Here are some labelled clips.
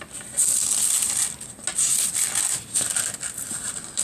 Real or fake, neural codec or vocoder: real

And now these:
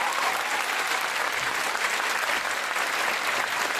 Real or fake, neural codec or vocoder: real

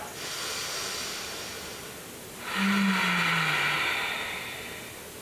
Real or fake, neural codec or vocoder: real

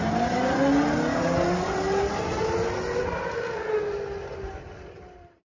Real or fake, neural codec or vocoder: real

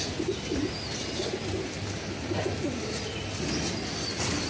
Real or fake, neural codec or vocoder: real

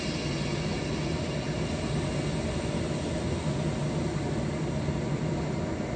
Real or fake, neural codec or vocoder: real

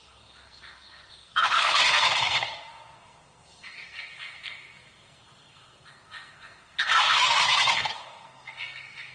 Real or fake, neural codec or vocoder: fake, codec, SNAC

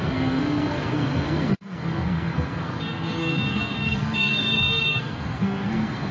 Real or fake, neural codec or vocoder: fake, codec, SNAC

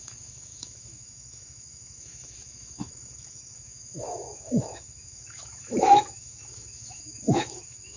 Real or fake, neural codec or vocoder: fake, autoencoder, DAC-VAE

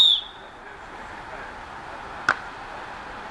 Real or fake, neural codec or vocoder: real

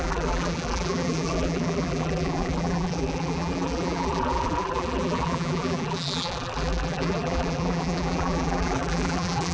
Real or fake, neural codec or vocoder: fake, vocoder, BigVGAN v2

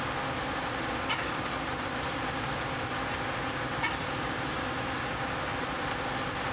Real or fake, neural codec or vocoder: real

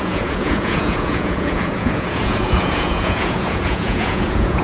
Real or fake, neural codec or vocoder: fake, vocoder, Vocos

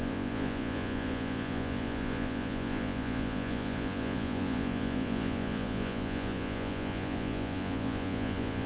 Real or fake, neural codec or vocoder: fake, vocoder, Vocos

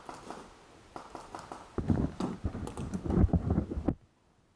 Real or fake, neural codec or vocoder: real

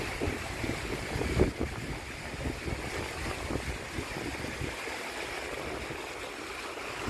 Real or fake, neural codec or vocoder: real